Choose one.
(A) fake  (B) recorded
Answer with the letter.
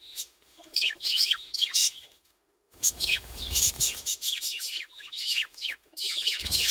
A